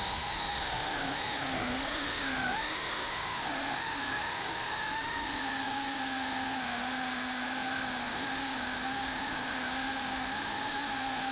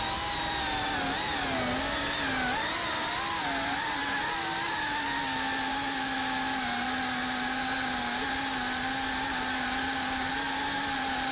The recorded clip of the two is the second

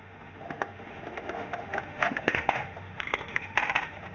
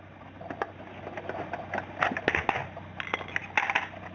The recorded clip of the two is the second